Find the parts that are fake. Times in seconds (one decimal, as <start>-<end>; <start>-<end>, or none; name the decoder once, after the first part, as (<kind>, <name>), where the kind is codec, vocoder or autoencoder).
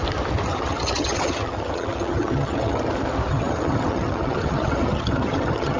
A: 0.5-2.9 (vocoder, HiFi-GAN); 3.3-5.8